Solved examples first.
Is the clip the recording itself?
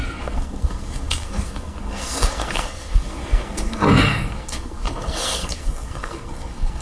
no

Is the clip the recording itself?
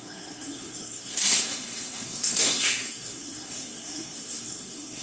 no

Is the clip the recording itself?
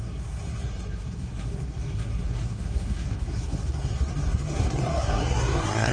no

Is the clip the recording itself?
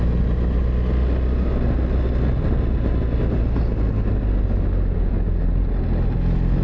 yes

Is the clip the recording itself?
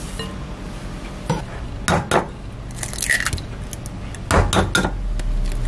yes